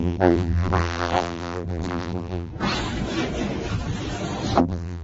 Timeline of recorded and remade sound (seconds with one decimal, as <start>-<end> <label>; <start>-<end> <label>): 0.0-2.5 remade; 2.5-4.6 recorded; 4.6-5.0 remade